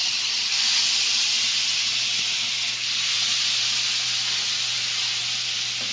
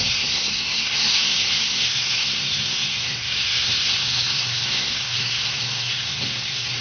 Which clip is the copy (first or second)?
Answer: second